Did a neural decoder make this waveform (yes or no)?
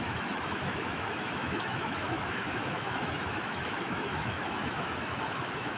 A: yes